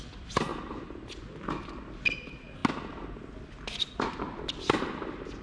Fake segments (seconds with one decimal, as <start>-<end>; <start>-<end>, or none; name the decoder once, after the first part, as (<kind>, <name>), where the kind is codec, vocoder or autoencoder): none